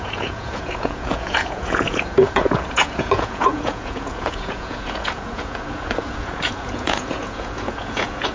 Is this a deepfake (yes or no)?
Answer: yes